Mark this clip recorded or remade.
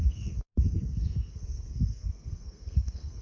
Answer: remade